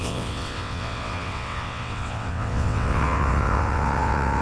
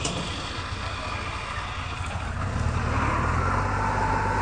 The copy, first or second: first